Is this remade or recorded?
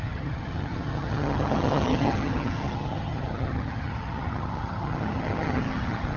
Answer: remade